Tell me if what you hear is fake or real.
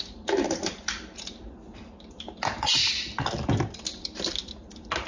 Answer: real